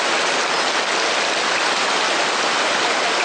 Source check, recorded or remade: recorded